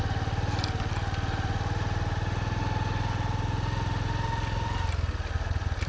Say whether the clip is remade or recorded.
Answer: recorded